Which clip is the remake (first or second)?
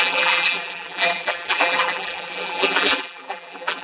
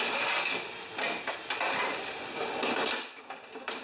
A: first